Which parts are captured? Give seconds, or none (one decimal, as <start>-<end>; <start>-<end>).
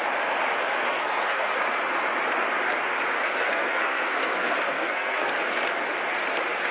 0.0-0.9; 1.6-3.1; 5.3-6.7